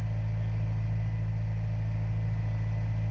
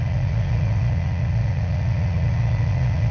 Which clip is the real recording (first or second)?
first